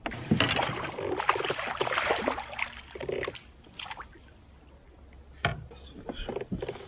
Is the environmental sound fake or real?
real